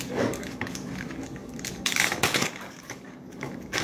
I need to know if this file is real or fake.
fake